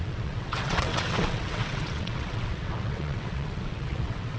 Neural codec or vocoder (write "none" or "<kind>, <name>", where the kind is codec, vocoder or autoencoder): vocoder, WaveNeXt